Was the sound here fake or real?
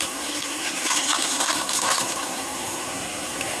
fake